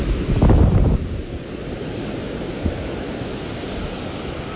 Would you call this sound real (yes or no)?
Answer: yes